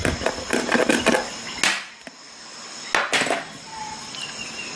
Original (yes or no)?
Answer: yes